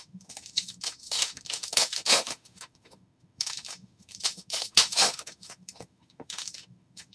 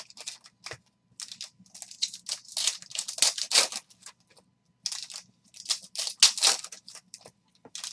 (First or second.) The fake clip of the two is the first